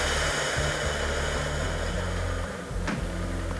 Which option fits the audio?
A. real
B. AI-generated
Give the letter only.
A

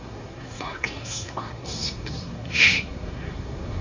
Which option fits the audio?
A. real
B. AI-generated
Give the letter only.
B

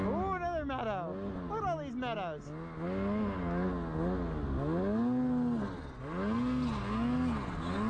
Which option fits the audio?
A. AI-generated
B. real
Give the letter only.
B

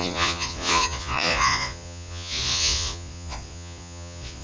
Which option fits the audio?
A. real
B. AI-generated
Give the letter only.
B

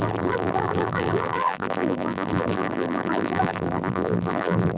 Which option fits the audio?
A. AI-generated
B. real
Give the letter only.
A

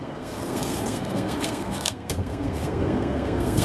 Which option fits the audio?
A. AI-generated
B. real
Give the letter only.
A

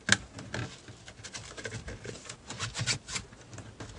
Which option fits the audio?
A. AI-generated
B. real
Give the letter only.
B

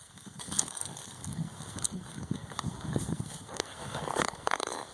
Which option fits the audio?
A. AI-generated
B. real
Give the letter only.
A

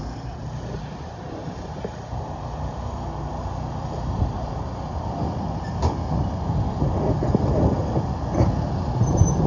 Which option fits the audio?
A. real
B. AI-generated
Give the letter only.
A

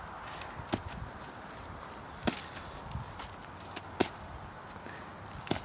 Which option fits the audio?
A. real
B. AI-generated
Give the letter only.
A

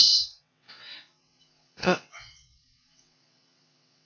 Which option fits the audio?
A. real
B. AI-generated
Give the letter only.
B